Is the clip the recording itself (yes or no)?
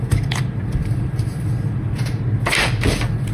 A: no